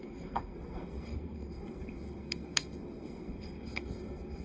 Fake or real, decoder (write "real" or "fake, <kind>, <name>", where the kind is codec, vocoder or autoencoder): fake, codec, SNAC